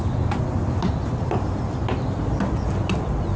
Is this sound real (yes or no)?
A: yes